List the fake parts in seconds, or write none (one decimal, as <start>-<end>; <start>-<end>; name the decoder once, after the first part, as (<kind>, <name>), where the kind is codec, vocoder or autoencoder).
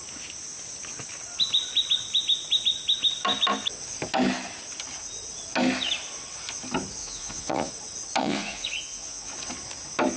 7.0-7.7 (vocoder, Vocos); 8.2-9.3